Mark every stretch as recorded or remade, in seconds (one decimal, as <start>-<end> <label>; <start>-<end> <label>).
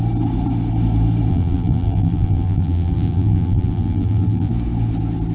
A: 0.0-1.3 recorded; 1.3-4.5 remade; 4.5-5.3 recorded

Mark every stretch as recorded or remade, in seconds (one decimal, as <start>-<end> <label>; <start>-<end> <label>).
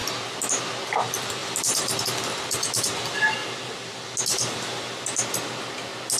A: 0.0-6.2 recorded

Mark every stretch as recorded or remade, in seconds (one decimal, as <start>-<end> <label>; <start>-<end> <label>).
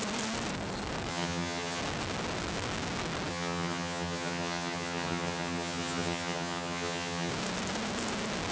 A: 0.0-1.1 recorded; 1.1-1.8 remade; 1.8-3.3 recorded; 3.3-7.3 remade; 7.3-8.5 recorded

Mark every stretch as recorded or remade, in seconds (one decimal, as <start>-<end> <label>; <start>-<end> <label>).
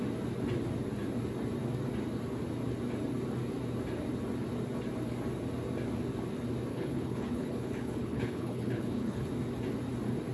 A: 0.0-6.7 recorded; 6.7-9.3 remade; 9.3-10.3 recorded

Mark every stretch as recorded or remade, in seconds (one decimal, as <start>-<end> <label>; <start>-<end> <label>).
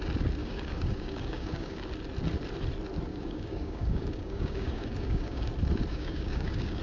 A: 0.0-0.4 recorded; 0.4-1.8 remade; 1.8-3.1 recorded; 3.1-5.5 remade; 5.5-5.9 recorded; 5.9-6.8 remade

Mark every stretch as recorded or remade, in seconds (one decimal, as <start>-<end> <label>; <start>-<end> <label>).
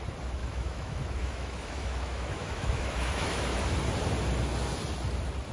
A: 0.0-0.4 recorded; 0.4-3.7 remade; 3.7-5.5 recorded